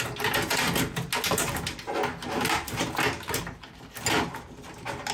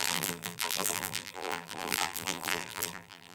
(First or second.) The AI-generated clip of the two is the second